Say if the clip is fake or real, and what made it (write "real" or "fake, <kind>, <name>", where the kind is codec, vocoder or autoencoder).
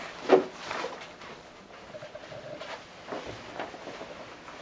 real